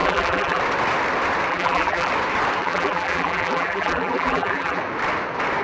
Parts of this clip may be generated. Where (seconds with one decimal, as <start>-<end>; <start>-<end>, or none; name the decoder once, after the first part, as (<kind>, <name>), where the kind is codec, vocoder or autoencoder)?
0.0-0.6 (vocoder, BigVGAN v2); 1.5-2.1; 2.6-4.8